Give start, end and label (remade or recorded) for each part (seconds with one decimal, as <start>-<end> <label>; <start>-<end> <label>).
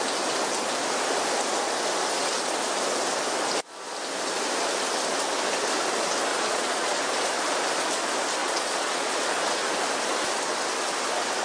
0.0-6.3 recorded; 6.3-7.0 remade; 7.0-8.4 recorded; 8.4-9.6 remade; 9.6-11.4 recorded